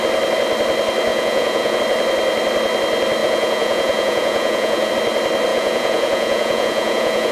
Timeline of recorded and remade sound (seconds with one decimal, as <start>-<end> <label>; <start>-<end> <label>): 0.0-1.1 recorded; 1.1-1.8 remade; 1.8-3.2 recorded; 3.2-4.9 remade; 4.9-5.5 recorded; 5.5-7.3 remade